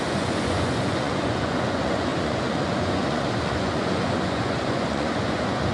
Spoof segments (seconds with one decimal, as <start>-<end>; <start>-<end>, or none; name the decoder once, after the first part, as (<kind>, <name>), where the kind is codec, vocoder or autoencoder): 0.0-5.7 (vocoder, Vocos)